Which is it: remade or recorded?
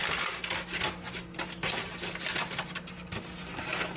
recorded